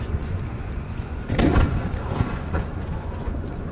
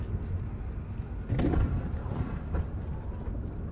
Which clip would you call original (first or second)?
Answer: second